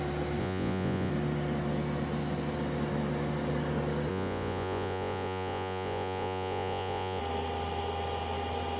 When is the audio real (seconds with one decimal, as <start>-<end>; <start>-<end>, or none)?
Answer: 0.0-0.4; 1.1-4.1; 7.2-8.8